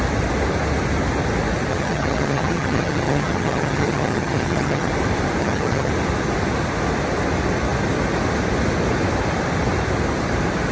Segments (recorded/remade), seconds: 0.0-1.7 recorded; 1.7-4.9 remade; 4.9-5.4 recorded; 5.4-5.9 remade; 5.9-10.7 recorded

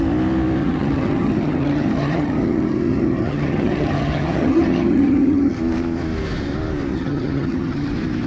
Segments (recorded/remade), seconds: 0.0-0.6 recorded; 0.6-5.6 remade; 5.6-6.9 recorded; 6.9-7.9 remade; 7.9-8.3 recorded

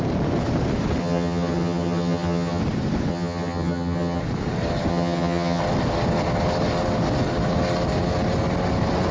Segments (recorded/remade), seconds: 0.0-1.0 recorded; 1.0-2.6 remade; 2.6-3.1 recorded; 3.1-4.2 remade; 4.2-4.9 recorded; 4.9-5.6 remade; 5.6-9.1 recorded